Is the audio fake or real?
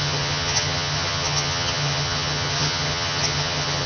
fake